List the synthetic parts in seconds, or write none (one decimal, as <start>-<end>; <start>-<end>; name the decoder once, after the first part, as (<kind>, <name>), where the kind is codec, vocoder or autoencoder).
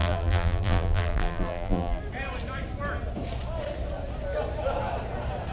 0.0-2.0 (vocoder, BigVGAN v2)